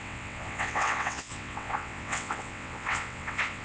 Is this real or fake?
fake